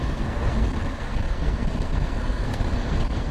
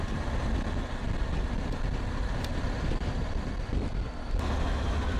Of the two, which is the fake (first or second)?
first